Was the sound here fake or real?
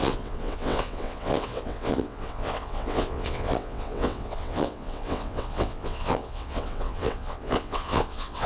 fake